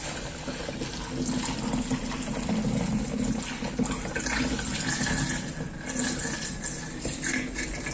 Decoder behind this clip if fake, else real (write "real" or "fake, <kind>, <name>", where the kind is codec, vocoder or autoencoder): real